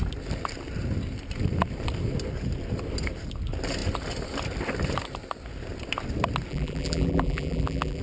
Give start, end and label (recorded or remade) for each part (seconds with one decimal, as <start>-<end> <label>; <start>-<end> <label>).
0.0-6.5 recorded; 6.5-8.0 remade